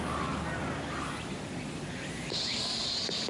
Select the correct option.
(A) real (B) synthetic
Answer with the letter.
A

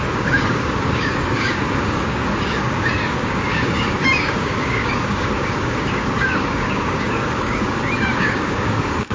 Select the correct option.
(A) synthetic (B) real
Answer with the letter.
A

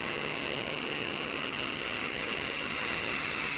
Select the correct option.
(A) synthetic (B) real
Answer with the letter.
A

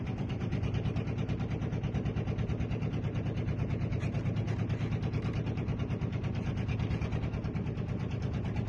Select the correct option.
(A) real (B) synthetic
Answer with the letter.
A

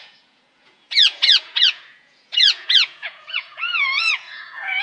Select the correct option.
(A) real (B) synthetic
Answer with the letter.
B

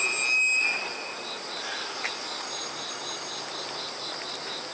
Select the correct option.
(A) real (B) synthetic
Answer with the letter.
A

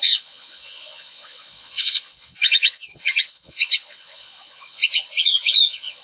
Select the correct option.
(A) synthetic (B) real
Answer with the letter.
A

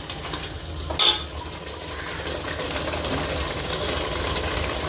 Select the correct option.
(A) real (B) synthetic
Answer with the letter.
A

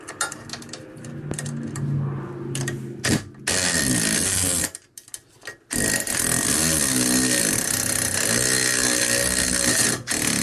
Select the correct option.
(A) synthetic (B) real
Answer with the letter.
B